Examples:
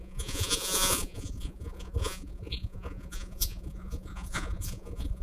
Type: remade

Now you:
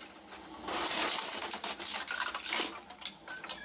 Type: recorded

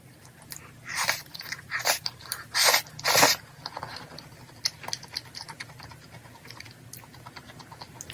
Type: recorded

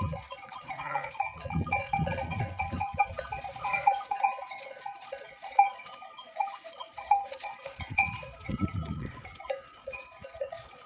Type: remade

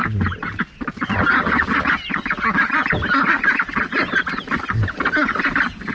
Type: recorded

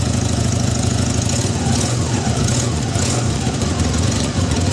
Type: remade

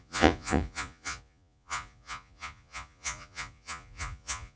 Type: remade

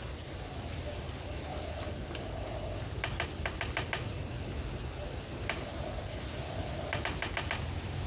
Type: recorded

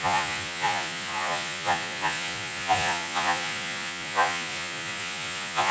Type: remade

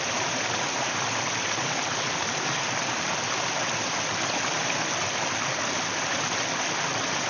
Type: recorded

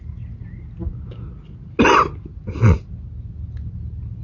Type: recorded